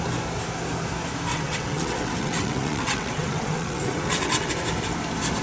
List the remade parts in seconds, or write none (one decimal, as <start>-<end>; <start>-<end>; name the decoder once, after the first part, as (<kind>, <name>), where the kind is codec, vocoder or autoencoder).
1.3-4.5 (vocoder, WaveNeXt)